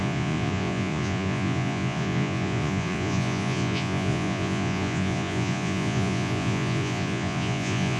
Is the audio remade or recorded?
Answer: remade